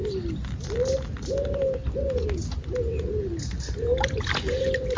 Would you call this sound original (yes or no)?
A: yes